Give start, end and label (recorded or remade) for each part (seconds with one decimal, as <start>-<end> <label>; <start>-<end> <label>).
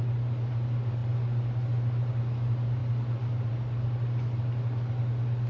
0.0-5.5 recorded